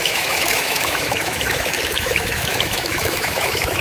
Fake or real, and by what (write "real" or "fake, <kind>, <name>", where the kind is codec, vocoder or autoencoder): fake, autoencoder, DAC-VAE